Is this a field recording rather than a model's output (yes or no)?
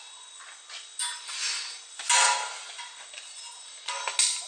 yes